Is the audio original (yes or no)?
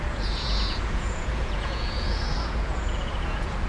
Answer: no